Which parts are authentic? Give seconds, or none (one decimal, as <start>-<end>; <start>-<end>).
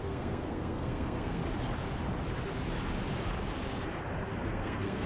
1.4-4.5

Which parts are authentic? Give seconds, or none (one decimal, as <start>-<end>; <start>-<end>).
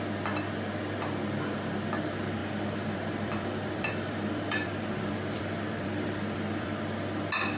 0.0-2.4; 6.8-7.6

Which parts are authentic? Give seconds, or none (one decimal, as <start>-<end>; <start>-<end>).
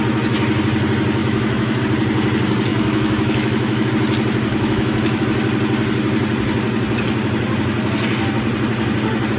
0.0-1.2; 1.8-2.7; 3.9-4.5; 5.2-9.4